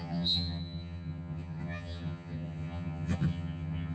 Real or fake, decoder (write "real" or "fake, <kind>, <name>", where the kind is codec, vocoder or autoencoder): fake, vocoder, HiFi-GAN